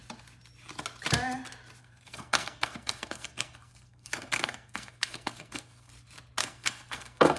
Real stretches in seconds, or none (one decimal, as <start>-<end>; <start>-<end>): 0.0-1.8; 5.9-6.4